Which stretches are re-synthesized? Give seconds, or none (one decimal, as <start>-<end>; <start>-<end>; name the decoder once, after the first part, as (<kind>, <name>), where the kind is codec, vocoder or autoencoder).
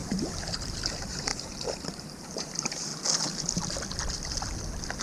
0.9-1.3 (vocoder, BigVGAN v2); 2.0-2.9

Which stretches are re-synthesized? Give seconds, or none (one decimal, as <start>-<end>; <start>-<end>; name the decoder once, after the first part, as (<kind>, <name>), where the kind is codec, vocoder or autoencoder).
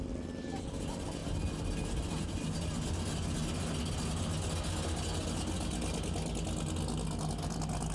none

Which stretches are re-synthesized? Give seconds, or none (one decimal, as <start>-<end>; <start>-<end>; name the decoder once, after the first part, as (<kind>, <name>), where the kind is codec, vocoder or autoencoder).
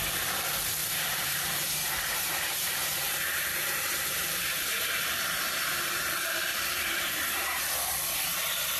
0.8-5.7 (vocoder, BigVGAN v2); 6.5-7.6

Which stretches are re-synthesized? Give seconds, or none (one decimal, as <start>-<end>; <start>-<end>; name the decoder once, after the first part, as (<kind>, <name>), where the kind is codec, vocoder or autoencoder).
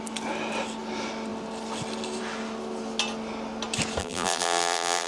4.0-5.1 (vocoder, BigVGAN v2)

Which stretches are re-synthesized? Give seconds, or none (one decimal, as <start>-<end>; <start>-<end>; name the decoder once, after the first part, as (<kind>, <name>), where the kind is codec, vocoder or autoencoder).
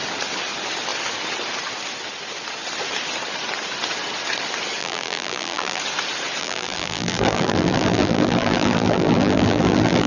4.8-5.8 (vocoder, BigVGAN v2); 6.4-10.1